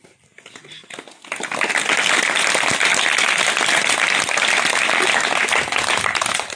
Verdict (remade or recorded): recorded